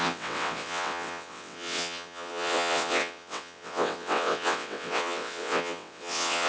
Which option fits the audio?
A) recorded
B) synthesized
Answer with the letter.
B